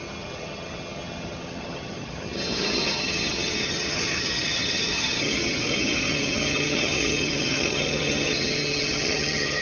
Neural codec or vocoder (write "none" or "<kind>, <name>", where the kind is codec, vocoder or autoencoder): vocoder, HiFi-GAN